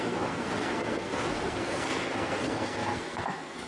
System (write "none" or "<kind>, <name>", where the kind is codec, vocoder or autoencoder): codec, SNAC